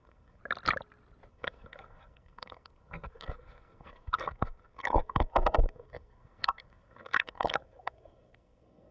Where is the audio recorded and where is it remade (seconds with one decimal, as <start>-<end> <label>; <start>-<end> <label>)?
0.0-0.4 remade; 0.4-1.3 recorded; 1.3-8.9 remade